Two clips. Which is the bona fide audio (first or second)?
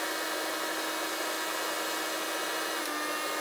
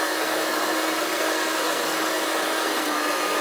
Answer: first